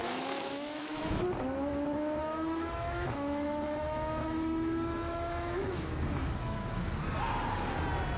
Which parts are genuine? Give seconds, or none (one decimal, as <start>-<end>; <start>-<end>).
1.2-2.2; 6.9-8.2